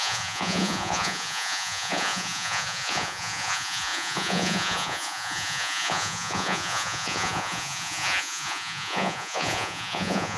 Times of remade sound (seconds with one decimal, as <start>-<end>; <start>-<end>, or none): 0.0-10.4